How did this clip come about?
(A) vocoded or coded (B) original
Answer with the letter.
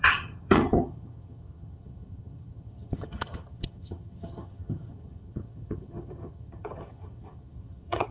A